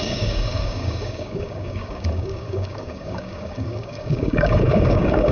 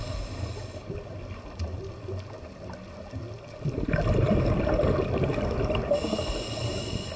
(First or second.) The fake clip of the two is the first